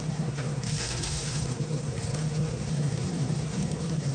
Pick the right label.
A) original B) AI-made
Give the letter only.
B